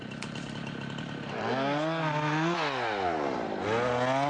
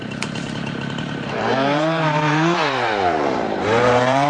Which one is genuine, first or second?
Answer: first